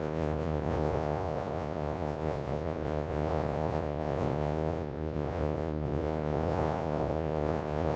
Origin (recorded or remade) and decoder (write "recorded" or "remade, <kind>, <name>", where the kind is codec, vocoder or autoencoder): remade, vocoder, Vocos